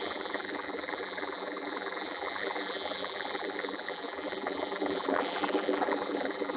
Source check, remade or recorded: remade